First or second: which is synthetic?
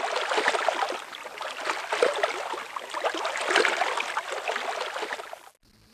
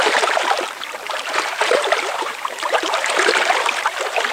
second